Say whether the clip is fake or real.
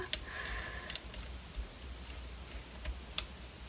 real